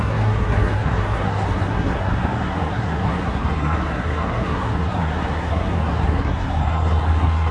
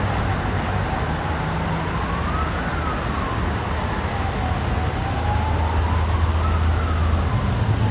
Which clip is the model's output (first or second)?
first